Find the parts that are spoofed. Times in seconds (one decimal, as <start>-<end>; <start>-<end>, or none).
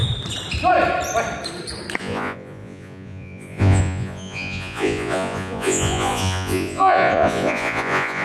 2.0-8.2